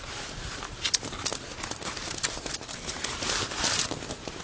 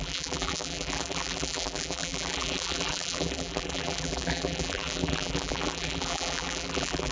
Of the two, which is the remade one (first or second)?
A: second